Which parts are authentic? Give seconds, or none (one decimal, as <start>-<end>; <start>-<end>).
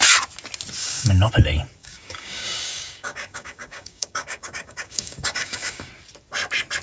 0.0-0.8; 1.3-1.8; 5.9-6.8